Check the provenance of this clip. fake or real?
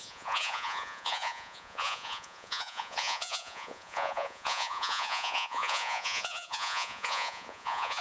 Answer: fake